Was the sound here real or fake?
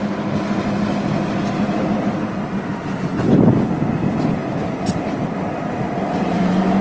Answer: real